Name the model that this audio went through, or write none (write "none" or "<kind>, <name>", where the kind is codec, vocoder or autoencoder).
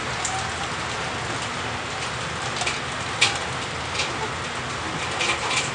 none